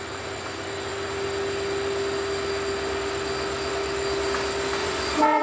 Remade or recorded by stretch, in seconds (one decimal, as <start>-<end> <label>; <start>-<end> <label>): 0.0-4.8 recorded; 4.8-5.4 remade